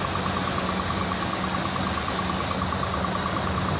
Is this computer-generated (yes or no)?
no